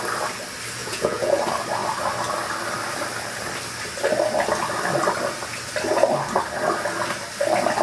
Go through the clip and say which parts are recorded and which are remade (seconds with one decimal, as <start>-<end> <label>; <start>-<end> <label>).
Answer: 0.0-0.8 recorded; 0.8-1.4 remade; 1.4-7.8 recorded